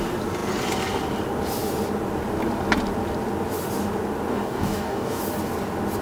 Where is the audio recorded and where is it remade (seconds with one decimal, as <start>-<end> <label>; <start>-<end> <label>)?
0.0-4.3 recorded; 4.3-5.2 remade; 5.2-6.0 recorded